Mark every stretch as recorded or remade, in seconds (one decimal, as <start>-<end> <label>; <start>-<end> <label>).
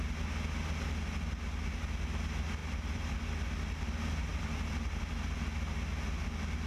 0.0-2.6 recorded; 2.6-3.1 remade; 3.1-4.3 recorded; 4.3-5.1 remade; 5.1-6.7 recorded